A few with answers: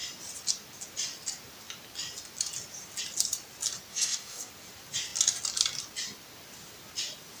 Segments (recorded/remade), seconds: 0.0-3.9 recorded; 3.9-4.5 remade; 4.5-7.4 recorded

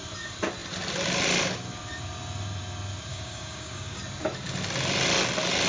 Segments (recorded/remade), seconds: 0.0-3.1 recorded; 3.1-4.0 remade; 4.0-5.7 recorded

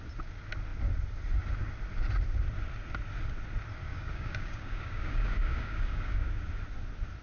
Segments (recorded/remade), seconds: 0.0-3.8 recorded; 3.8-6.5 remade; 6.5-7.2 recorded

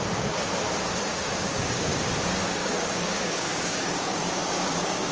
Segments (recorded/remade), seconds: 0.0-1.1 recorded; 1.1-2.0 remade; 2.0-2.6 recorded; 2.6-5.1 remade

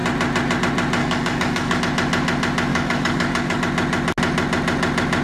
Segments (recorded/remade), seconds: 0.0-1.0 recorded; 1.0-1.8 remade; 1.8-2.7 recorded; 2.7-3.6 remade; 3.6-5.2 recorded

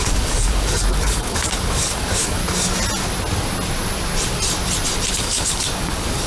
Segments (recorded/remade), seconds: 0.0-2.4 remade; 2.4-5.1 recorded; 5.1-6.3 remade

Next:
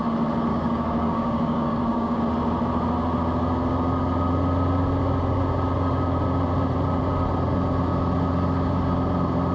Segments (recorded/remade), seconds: 0.0-0.5 recorded; 0.5-2.2 remade; 2.2-9.5 recorded